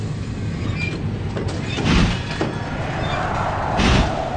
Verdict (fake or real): real